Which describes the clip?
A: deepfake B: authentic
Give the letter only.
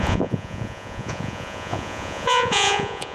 A